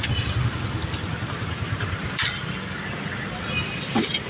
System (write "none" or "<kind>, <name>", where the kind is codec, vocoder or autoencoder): vocoder, BigVGAN v2